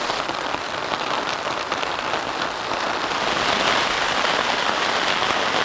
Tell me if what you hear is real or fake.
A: real